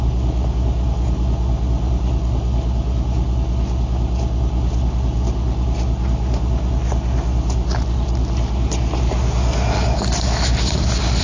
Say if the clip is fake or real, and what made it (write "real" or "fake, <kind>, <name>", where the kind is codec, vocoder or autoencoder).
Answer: real